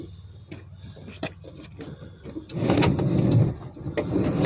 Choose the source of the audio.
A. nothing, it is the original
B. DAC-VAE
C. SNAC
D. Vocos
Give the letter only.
A